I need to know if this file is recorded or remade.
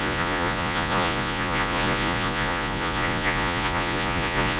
remade